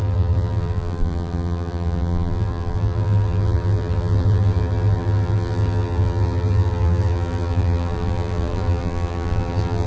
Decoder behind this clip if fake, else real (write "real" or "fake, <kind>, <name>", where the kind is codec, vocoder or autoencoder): fake, vocoder, BigVGAN v2